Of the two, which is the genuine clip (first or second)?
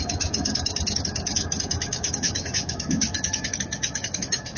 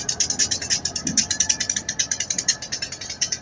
second